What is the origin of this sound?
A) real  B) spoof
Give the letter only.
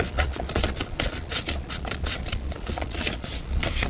B